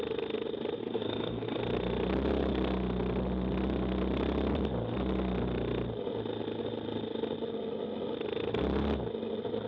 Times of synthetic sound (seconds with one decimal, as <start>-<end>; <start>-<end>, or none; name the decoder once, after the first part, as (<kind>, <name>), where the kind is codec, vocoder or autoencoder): 0.8-1.6 (codec, SNAC)